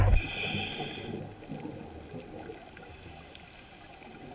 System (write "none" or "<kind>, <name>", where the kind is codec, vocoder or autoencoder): none